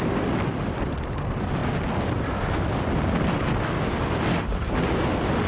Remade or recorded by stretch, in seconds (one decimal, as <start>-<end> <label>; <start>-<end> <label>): 0.0-5.5 remade